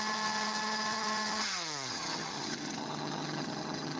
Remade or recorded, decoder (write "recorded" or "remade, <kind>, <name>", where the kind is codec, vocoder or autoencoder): remade, vocoder, HiFi-GAN